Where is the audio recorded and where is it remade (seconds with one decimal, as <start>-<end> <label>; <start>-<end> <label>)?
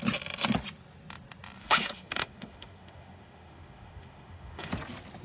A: 0.0-1.6 recorded; 1.6-4.7 remade; 4.7-5.2 recorded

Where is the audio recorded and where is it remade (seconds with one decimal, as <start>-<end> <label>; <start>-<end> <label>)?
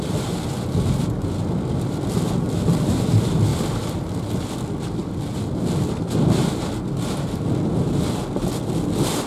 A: 0.0-9.3 recorded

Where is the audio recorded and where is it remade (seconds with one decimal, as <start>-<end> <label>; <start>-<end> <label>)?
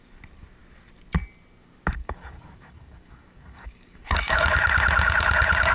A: 0.0-2.0 recorded; 2.0-4.4 remade; 4.4-5.7 recorded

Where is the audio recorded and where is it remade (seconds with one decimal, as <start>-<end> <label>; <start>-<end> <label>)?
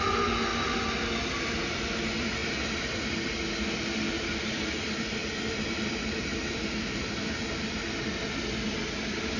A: 0.0-9.4 recorded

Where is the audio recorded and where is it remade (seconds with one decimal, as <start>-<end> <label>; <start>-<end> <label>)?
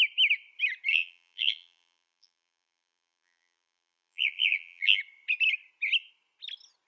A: 0.0-0.9 recorded; 0.9-5.0 remade; 5.0-6.9 recorded